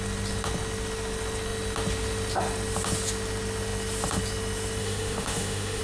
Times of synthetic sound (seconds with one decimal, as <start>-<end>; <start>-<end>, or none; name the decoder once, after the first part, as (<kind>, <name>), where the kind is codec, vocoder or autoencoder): 4.8-5.8 (autoencoder, DAC-VAE)